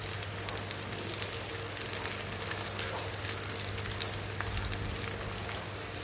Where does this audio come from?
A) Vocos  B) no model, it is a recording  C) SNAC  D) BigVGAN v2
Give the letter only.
B